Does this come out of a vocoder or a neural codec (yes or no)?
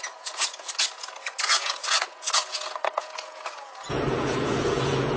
yes